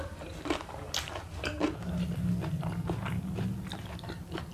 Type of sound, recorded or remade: recorded